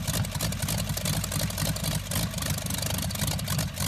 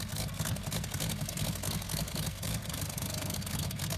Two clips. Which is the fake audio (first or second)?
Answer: second